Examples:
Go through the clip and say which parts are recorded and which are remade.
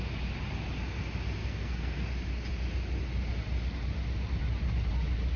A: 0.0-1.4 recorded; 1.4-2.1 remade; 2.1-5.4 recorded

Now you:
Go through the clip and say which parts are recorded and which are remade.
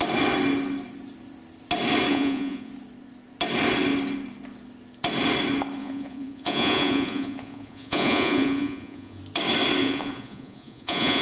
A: 0.0-2.1 recorded; 2.1-2.7 remade; 2.7-5.8 recorded; 5.8-9.2 remade; 9.2-9.8 recorded; 9.8-11.2 remade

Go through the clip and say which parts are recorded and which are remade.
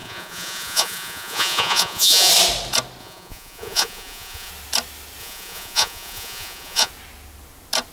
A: 0.0-2.3 remade; 2.3-3.0 recorded; 3.0-4.5 remade; 4.5-5.2 recorded; 5.2-6.9 remade; 6.9-7.9 recorded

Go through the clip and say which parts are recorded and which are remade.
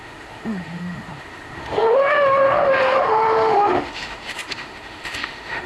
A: 0.0-5.7 remade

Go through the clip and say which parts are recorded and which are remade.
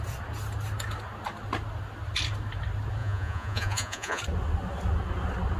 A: 0.0-3.0 recorded; 3.0-4.2 remade; 4.2-5.6 recorded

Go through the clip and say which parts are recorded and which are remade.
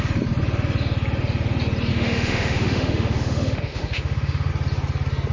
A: 0.0-1.9 recorded; 1.9-4.5 remade; 4.5-5.3 recorded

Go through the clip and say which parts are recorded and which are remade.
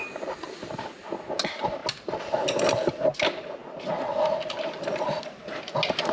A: 0.0-0.8 remade; 0.8-3.6 recorded; 3.6-5.0 remade; 5.0-6.1 recorded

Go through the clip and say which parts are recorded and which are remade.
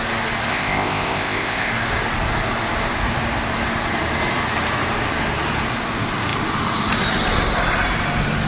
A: 0.0-0.5 recorded; 0.5-1.7 remade; 1.7-8.5 recorded